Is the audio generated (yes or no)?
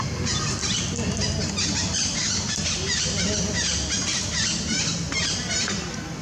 no